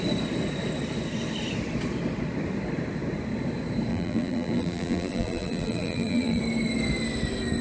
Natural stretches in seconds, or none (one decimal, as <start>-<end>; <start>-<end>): 0.0-3.9; 6.4-7.6